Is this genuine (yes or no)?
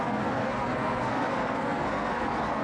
no